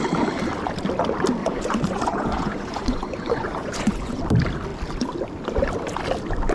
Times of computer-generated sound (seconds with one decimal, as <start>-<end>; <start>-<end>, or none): 1.4-4.2